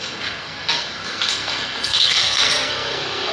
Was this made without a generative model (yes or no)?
no